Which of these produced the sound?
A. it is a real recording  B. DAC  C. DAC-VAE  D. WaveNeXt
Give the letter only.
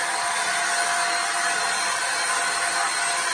A